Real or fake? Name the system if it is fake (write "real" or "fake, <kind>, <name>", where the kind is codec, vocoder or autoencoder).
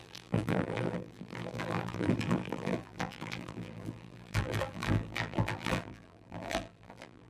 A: fake, vocoder, BigVGAN v2